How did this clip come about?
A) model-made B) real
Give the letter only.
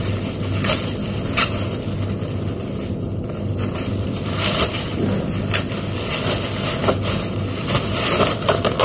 B